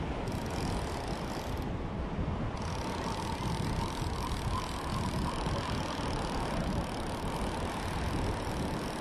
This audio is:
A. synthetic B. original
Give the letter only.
B